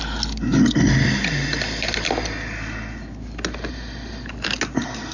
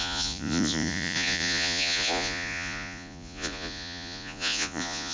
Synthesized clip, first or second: second